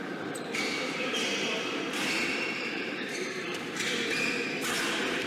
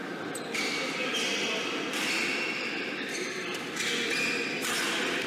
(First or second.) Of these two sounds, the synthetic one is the first